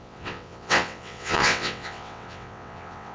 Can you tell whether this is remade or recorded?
remade